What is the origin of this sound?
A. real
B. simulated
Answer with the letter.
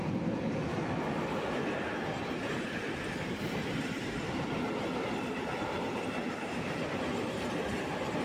A